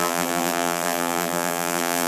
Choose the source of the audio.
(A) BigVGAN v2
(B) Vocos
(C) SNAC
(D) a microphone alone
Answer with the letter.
A